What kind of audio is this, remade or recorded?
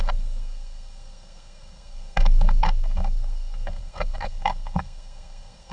remade